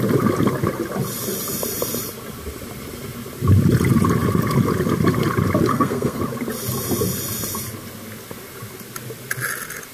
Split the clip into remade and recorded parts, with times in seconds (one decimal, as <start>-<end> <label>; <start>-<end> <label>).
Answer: 0.0-5.7 recorded; 5.7-6.2 remade; 6.2-9.9 recorded